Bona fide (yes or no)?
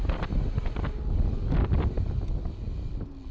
yes